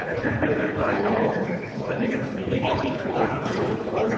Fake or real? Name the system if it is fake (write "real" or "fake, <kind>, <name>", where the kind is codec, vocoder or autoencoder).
fake, codec, HILCodec